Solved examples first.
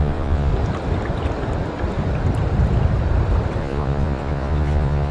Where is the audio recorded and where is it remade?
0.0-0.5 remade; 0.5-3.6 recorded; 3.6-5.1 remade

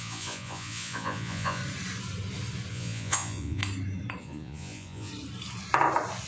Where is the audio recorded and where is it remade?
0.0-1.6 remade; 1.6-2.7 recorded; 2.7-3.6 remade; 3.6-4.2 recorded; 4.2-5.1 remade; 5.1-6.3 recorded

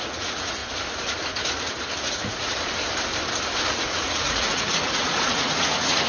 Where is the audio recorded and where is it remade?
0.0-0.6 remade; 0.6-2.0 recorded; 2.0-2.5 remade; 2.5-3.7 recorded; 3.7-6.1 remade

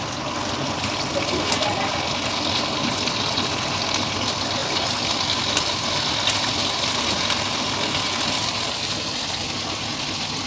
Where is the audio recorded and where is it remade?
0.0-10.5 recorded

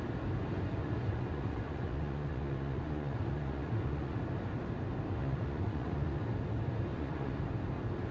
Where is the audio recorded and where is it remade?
0.0-0.8 recorded; 0.8-4.2 remade; 4.2-5.2 recorded; 5.2-6.2 remade; 6.2-6.9 recorded; 6.9-7.4 remade; 7.4-8.1 recorded